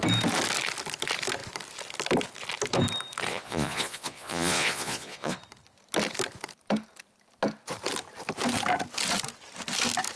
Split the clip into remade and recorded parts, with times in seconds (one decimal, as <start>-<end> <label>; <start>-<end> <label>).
0.0-3.3 recorded; 3.3-5.4 remade; 5.4-10.2 recorded